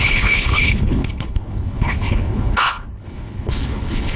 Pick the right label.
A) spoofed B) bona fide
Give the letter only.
A